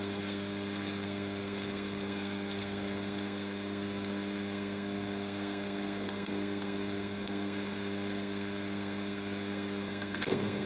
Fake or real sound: fake